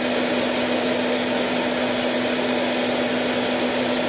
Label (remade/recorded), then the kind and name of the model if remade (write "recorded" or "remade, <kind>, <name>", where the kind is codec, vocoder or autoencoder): recorded